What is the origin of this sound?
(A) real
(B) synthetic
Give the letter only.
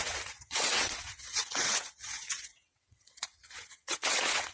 B